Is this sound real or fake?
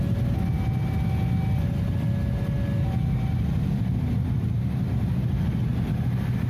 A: real